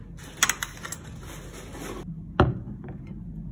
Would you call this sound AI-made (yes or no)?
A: no